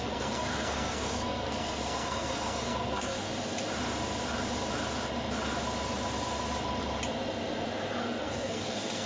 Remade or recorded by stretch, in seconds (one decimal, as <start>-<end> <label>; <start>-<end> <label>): 0.0-3.3 remade; 3.3-8.0 recorded; 8.0-9.1 remade